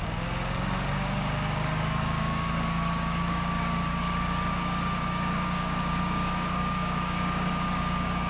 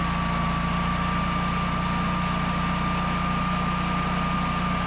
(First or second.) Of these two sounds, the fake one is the first